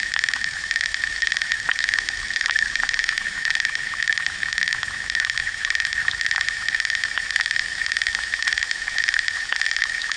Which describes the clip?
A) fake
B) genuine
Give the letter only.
A